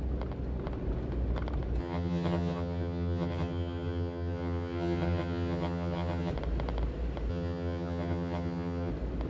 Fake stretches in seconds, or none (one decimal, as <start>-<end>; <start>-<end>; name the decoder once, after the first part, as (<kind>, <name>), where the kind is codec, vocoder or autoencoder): 1.8-6.3 (vocoder, HiFi-GAN); 7.3-8.9